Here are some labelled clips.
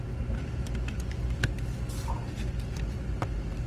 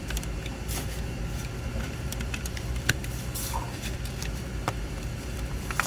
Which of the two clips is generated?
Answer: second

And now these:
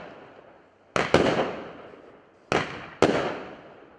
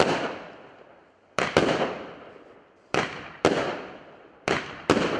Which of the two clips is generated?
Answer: second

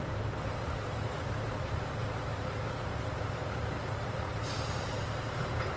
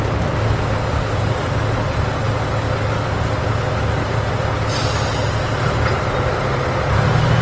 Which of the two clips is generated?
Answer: first